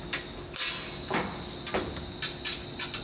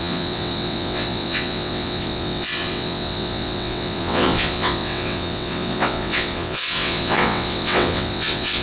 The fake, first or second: second